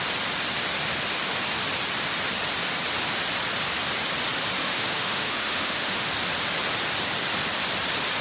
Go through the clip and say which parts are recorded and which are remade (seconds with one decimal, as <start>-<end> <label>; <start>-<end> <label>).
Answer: 0.0-4.6 recorded; 4.6-6.1 remade; 6.1-8.2 recorded